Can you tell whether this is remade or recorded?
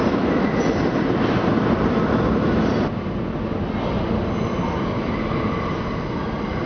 recorded